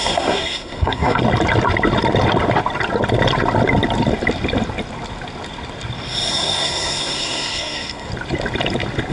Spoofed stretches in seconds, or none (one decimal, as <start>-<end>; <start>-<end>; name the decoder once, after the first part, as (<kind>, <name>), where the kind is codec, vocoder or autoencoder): 0.0-1.2 (codec, SNAC); 6.3-8.1